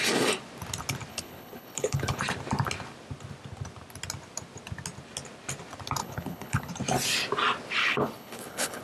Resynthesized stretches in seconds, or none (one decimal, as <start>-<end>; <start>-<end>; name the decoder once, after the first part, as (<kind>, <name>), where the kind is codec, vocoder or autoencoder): 1.1-2.2 (codec, HILCodec); 6.0-6.7; 7.8-8.8